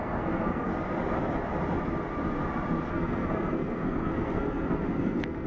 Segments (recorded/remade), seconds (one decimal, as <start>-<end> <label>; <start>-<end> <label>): 0.0-0.7 remade; 0.7-2.9 recorded; 2.9-5.5 remade

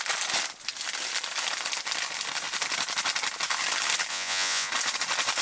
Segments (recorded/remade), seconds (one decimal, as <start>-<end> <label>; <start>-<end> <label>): 0.0-4.1 recorded; 4.1-4.7 remade; 4.7-5.4 recorded

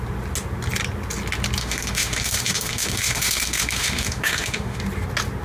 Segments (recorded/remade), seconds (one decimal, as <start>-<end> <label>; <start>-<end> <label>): 0.0-1.6 recorded; 1.6-4.8 remade; 4.8-5.4 recorded